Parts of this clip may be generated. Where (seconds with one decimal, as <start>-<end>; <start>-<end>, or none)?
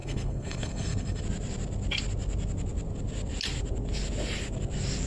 0.0-1.2